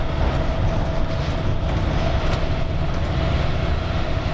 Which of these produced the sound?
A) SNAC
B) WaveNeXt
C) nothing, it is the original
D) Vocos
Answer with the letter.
C